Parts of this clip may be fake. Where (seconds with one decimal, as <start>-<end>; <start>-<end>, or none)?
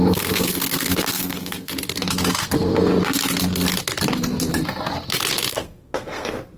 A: 0.0-1.7; 2.4-2.9; 5.5-6.6